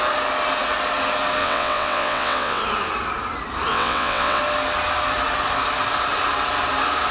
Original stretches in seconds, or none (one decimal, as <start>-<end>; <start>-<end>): 0.0-1.4; 2.6-3.7; 4.4-7.1